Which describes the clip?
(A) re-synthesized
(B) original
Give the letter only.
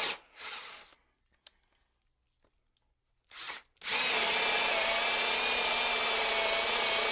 B